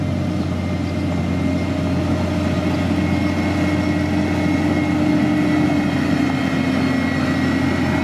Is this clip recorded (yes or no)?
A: yes